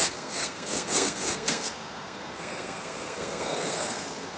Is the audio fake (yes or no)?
yes